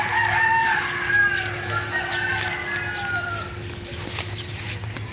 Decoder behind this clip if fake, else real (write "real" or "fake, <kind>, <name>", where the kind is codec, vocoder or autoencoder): real